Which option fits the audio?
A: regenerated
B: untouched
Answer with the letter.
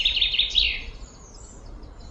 B